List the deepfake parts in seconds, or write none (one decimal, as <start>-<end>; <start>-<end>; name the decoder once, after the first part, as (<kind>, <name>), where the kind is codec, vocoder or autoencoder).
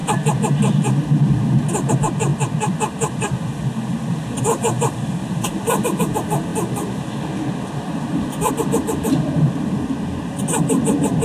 none